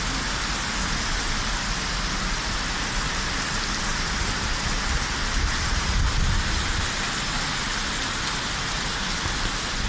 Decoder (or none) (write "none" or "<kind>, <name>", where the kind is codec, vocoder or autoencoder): none